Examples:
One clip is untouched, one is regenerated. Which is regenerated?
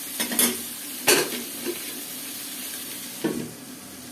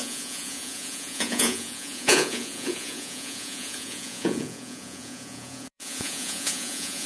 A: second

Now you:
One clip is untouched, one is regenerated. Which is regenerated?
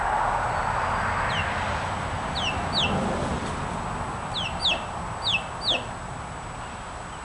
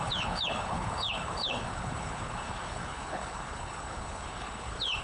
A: second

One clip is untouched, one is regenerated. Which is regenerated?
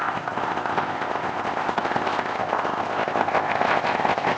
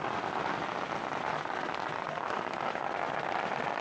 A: first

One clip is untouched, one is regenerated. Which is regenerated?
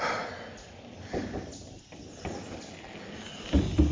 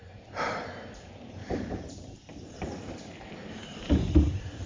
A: second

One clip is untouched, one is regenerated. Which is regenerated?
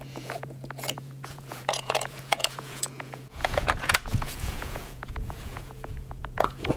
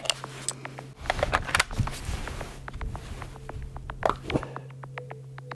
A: first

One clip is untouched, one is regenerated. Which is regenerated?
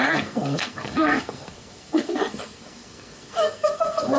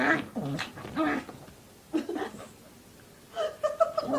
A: first